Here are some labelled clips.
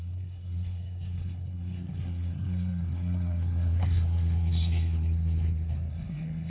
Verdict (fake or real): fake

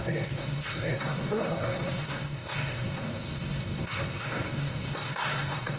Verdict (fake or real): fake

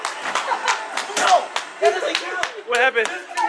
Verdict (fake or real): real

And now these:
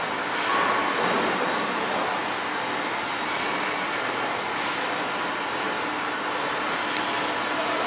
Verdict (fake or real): real